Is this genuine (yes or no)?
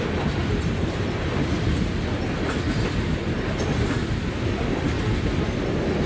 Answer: yes